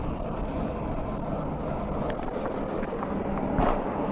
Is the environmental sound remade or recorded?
recorded